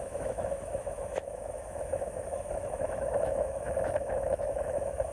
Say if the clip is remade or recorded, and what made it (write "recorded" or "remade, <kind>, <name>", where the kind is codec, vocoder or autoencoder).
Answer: remade, autoencoder, DAC-VAE